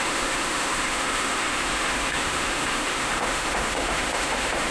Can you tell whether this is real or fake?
fake